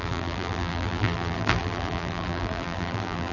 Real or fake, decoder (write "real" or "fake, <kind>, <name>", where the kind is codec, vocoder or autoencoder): fake, vocoder, BigVGAN v2